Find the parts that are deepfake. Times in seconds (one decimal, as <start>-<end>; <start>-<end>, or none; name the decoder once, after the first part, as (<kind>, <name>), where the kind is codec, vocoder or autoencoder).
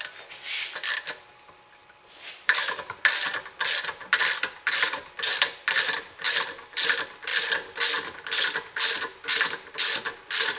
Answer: 1.8-2.6 (vocoder, BigVGAN v2)